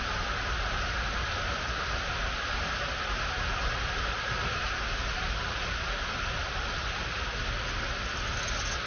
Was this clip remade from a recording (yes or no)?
no